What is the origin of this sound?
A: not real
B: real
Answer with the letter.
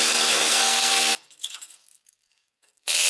A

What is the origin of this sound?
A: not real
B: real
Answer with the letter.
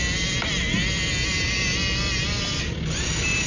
B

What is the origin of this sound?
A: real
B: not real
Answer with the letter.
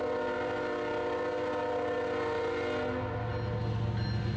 A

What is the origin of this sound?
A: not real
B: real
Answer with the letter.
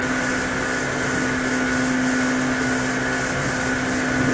B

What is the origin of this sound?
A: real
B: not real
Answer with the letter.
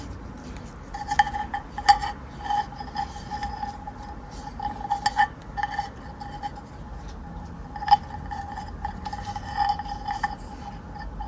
A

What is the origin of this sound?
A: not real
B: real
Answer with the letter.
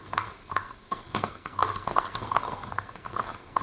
A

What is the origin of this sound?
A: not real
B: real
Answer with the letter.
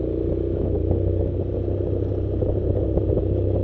B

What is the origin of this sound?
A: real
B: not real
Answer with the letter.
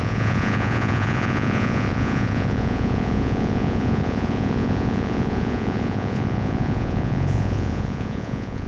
B